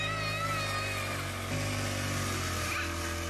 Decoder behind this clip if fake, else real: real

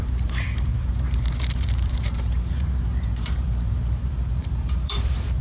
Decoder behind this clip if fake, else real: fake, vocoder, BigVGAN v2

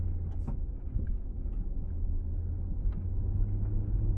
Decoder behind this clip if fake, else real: real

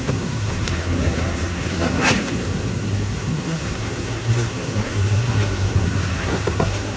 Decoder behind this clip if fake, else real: fake, codec, SNAC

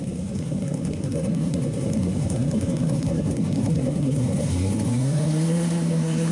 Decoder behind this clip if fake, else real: fake, codec, SNAC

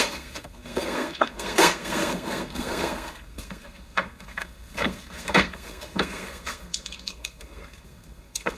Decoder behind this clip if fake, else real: fake, codec, SNAC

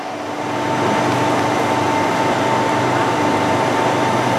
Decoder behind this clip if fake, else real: real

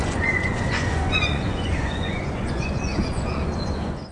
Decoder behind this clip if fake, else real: fake, vocoder, Vocos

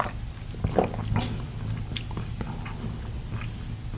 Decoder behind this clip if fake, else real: real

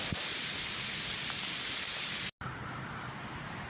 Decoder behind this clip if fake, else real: real